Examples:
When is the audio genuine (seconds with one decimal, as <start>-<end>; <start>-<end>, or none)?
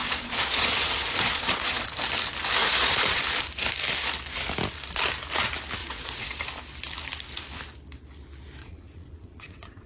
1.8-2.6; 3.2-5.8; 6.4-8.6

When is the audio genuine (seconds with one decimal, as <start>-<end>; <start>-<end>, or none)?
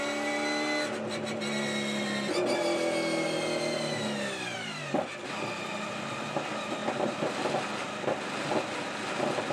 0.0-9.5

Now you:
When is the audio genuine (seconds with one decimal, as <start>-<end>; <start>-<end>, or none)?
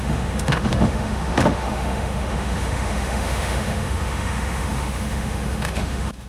none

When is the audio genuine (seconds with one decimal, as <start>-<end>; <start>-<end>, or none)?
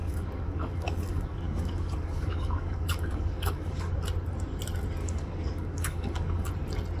3.9-5.0; 6.5-7.0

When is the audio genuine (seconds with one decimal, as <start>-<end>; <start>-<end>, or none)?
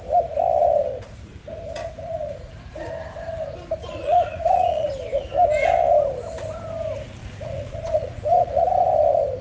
0.0-0.9; 1.4-1.8; 2.9-3.8; 4.9-7.2; 8.7-9.4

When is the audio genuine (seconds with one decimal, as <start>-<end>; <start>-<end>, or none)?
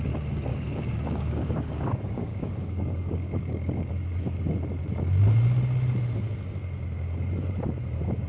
0.0-0.5; 3.9-8.3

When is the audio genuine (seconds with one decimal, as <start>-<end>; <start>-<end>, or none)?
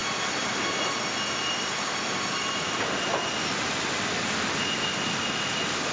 0.0-5.9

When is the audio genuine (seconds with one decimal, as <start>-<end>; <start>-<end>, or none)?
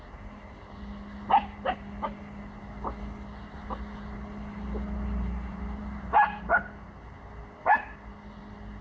0.0-8.8